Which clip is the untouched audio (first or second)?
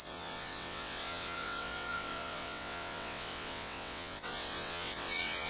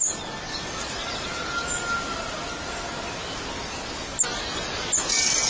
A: second